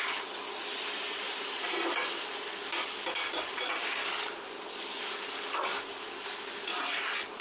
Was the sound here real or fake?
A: real